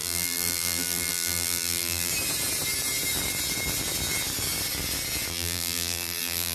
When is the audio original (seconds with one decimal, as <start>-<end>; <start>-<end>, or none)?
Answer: 2.1-5.3